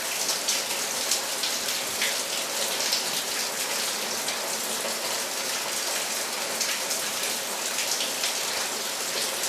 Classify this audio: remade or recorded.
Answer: recorded